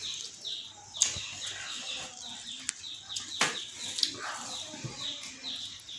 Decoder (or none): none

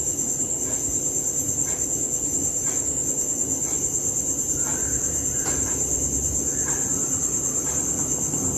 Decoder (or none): none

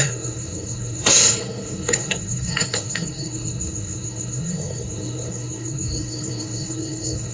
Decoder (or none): codec, SNAC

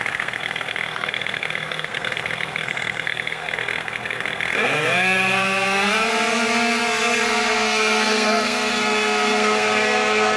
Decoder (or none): codec, SNAC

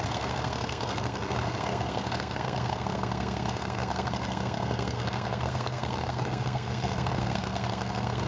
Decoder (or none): codec, SNAC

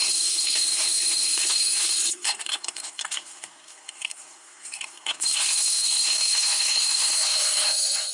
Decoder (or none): codec, SNAC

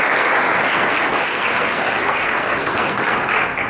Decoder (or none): codec, SNAC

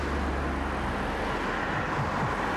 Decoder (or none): none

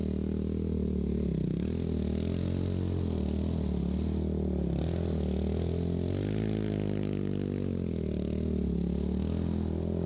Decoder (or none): none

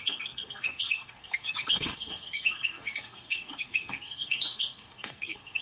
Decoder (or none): codec, SNAC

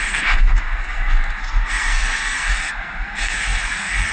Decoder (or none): codec, SNAC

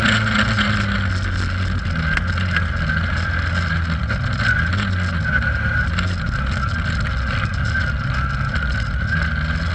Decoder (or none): none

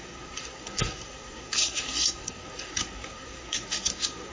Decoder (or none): codec, SNAC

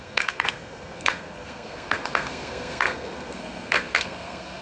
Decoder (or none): codec, SNAC